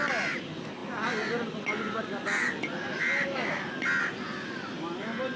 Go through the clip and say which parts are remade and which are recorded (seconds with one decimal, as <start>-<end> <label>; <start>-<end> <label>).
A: 0.0-5.4 recorded